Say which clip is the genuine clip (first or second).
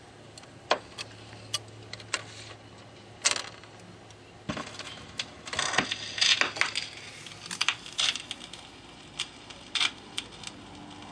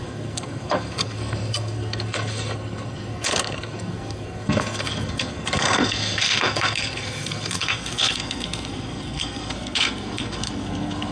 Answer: first